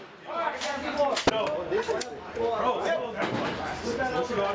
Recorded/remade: recorded